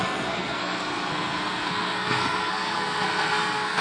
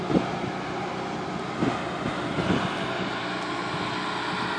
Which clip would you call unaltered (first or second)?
second